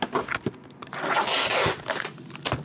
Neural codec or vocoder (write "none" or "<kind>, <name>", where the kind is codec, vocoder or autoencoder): none